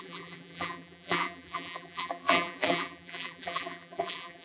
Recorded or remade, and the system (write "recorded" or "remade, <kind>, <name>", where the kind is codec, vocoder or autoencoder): remade, vocoder, BigVGAN v2